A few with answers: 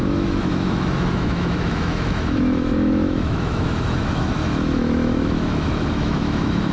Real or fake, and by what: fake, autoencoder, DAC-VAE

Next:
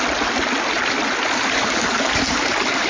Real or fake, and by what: real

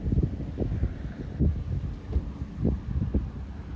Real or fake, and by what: real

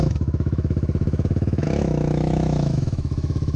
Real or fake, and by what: fake, autoencoder, DAC-VAE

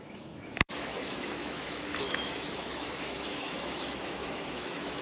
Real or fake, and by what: fake, autoencoder, DAC-VAE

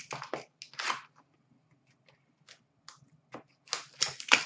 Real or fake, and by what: real